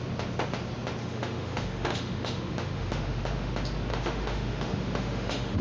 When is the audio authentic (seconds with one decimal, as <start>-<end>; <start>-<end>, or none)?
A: 0.0-1.0; 3.5-3.9